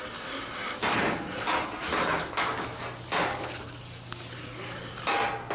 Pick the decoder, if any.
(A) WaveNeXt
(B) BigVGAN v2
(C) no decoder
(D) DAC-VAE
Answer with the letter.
C